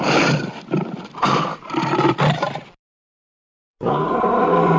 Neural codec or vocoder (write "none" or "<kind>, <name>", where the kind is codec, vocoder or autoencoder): vocoder, BigVGAN v2